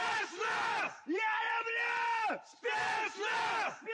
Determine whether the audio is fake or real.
fake